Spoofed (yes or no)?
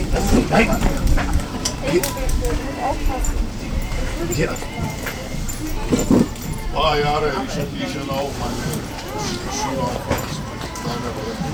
yes